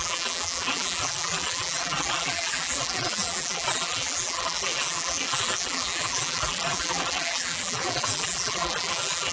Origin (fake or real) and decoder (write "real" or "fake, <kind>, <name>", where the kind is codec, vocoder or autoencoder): fake, vocoder, BigVGAN v2